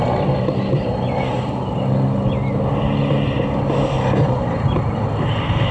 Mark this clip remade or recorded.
recorded